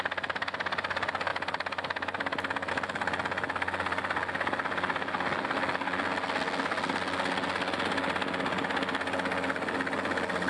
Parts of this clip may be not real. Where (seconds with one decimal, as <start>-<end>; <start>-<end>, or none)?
none